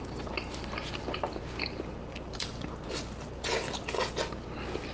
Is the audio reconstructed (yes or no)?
no